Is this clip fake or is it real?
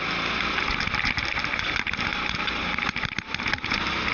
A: real